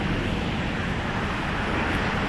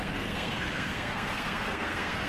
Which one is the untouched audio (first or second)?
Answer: first